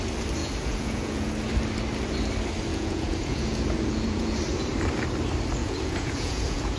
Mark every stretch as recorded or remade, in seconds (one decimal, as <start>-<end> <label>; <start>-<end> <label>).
0.0-0.4 recorded; 0.4-1.3 remade; 1.3-2.7 recorded; 2.7-4.4 remade; 4.4-5.6 recorded; 5.6-6.8 remade